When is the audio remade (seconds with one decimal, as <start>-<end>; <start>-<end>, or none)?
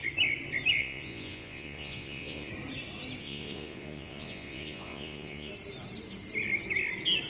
0.8-2.5; 3.2-5.5